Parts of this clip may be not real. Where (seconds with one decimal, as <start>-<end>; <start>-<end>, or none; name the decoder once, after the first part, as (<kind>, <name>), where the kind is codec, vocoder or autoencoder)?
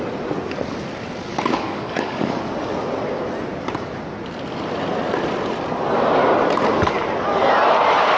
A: 1.3-2.4 (codec, DAC)